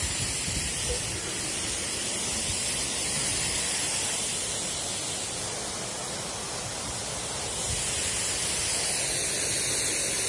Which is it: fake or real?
real